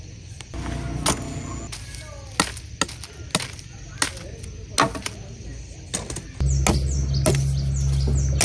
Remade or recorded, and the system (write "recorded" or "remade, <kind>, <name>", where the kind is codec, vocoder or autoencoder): recorded